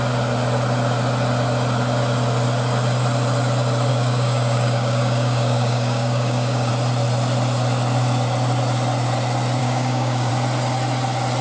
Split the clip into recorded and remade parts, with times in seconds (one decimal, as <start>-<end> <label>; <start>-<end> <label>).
0.0-3.9 recorded; 3.9-6.7 remade; 6.7-9.6 recorded; 9.6-10.3 remade; 10.3-11.4 recorded